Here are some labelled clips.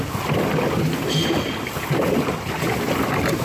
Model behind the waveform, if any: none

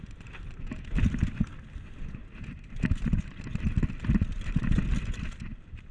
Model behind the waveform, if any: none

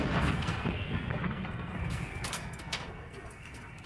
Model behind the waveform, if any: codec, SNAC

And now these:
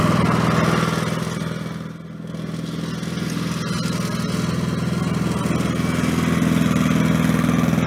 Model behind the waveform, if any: none